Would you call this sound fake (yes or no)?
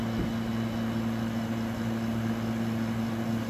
no